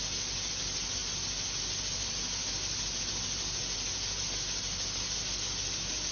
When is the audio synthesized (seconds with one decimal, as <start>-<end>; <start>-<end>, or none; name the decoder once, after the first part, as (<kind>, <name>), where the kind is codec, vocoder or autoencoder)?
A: none

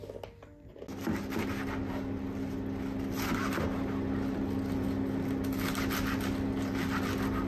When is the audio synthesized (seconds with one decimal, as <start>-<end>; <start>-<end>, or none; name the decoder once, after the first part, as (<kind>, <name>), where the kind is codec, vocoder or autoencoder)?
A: none

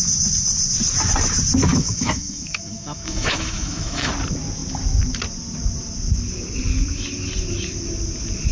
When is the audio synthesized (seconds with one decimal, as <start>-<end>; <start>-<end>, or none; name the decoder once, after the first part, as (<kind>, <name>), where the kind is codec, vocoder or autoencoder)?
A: 1.7-4.1 (autoencoder, DAC-VAE)

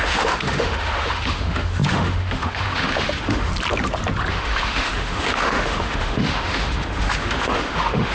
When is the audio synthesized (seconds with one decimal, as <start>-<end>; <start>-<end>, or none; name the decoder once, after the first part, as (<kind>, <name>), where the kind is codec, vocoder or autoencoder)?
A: 0.0-3.5 (autoencoder, DAC-VAE); 4.3-8.1

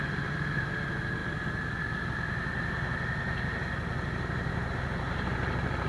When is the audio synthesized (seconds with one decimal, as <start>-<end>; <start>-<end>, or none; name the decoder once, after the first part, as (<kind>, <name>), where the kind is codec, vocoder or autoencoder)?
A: none

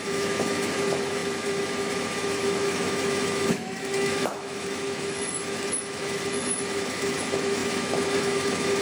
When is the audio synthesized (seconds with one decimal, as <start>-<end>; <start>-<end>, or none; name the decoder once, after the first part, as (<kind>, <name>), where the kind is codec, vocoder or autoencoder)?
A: 0.0-8.8 (autoencoder, DAC-VAE)